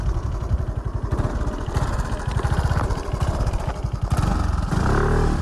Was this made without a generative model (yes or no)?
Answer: no